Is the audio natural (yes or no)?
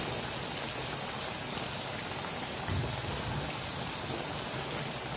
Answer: yes